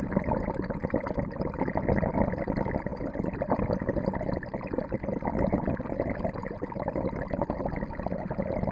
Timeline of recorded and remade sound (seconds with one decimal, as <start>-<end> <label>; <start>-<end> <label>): 0.0-6.4 recorded; 6.4-7.2 remade; 7.2-8.7 recorded